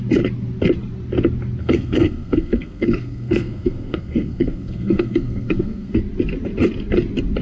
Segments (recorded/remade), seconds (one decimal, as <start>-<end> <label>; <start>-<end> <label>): 0.0-1.6 recorded; 1.6-6.0 remade; 6.0-7.4 recorded